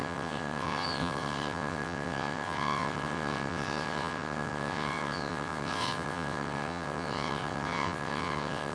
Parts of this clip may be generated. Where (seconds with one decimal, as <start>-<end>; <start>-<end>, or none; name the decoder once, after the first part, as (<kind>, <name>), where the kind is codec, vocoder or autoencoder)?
0.0-8.7 (vocoder, WaveNeXt)